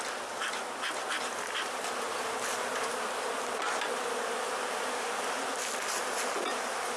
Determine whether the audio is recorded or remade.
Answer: recorded